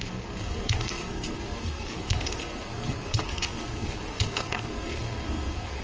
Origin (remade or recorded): remade